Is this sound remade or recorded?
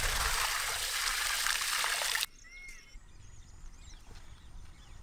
recorded